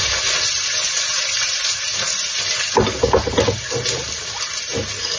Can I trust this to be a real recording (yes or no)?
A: yes